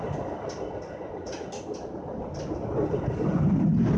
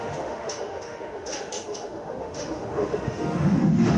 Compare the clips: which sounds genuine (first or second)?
first